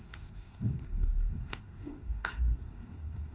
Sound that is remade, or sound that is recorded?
remade